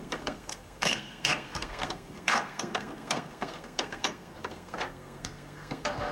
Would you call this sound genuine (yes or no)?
no